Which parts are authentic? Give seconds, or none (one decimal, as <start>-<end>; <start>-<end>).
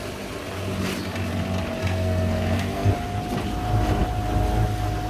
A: 0.0-1.8; 2.9-5.1